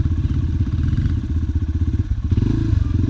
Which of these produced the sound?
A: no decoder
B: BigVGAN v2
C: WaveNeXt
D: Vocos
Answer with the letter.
A